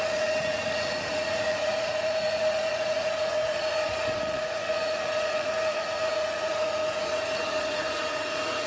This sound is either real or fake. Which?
fake